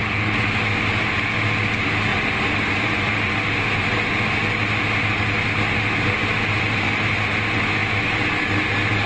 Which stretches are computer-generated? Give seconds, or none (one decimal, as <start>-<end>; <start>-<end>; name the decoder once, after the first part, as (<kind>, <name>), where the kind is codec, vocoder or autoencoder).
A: 2.1-3.2 (vocoder, BigVGAN v2)